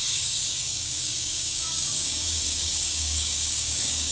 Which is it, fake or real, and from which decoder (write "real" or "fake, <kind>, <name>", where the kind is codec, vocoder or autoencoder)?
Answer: fake, codec, DAC